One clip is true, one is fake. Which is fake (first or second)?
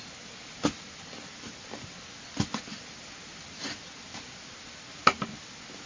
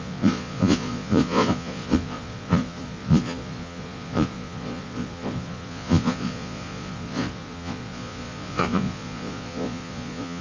second